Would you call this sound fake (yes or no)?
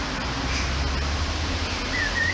no